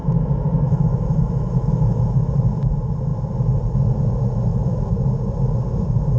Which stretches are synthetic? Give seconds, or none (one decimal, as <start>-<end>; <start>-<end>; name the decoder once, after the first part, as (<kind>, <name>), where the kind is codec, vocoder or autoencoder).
0.0-2.3 (autoencoder, DAC-VAE); 4.5-5.0